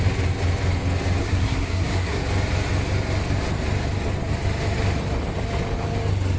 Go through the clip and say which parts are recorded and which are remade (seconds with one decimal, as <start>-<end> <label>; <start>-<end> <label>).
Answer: 0.0-1.2 recorded; 1.2-2.2 remade; 2.2-6.4 recorded